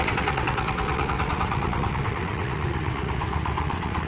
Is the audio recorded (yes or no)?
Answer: no